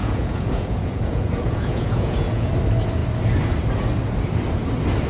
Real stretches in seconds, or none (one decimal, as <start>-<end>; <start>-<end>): 2.5-5.1